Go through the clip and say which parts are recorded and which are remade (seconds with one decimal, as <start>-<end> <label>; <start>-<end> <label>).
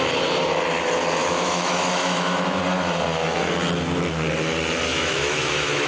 0.0-1.2 recorded; 1.2-2.6 remade; 2.6-4.9 recorded; 4.9-5.9 remade